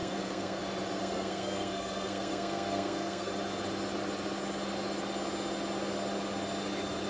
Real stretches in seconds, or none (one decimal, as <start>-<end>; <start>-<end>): 0.6-1.0; 3.3-7.1